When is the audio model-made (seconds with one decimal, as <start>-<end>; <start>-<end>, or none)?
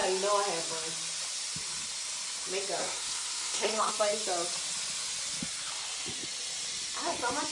2.8-3.9